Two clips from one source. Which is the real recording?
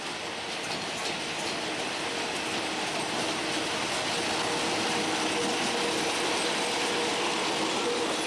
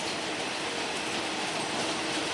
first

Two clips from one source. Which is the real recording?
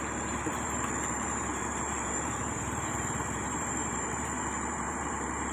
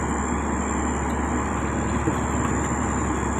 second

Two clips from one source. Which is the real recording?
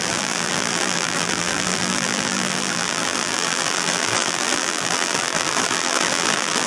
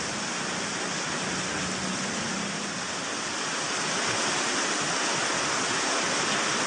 second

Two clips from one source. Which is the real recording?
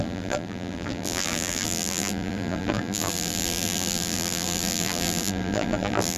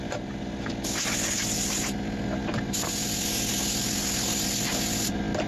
second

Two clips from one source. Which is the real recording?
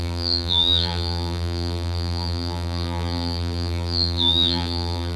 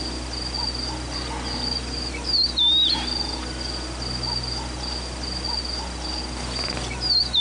second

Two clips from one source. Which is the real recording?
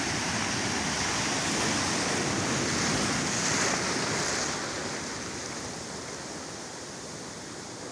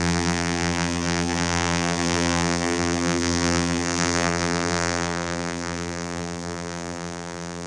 first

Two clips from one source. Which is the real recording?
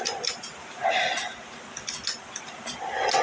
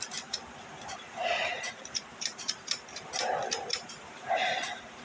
first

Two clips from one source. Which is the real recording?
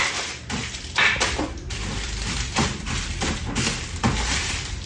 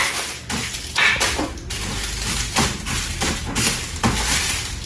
second